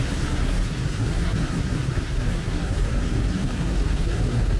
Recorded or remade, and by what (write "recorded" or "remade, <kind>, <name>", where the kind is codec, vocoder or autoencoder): remade, codec, SNAC